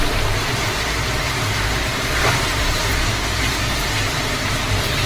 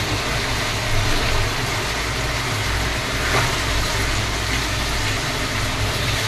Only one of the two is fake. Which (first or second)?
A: first